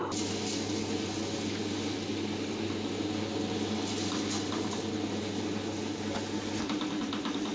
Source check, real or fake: real